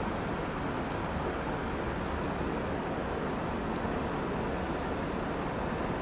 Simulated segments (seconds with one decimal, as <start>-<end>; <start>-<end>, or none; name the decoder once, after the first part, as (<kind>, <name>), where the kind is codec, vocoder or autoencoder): none